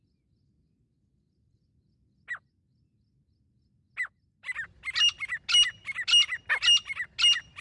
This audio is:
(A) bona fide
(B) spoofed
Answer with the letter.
A